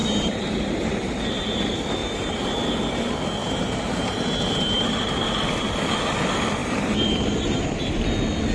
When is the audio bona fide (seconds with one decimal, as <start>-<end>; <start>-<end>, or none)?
1.4-2.0; 2.5-3.4; 5.8-6.6; 8.0-8.5